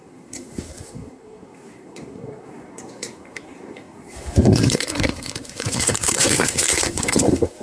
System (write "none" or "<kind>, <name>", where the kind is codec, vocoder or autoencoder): codec, SNAC